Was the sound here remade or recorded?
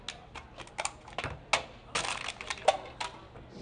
recorded